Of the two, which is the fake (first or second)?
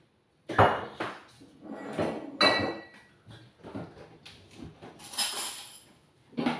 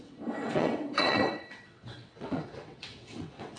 second